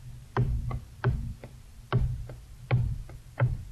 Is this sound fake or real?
real